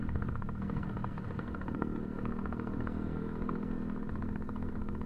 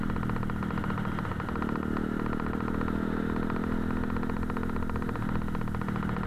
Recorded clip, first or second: second